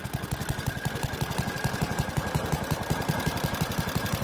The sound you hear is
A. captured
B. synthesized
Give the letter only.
A